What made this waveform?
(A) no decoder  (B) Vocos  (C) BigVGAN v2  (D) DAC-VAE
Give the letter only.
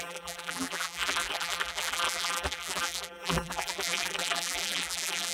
C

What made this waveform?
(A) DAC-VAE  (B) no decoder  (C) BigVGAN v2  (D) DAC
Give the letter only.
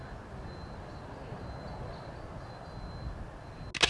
B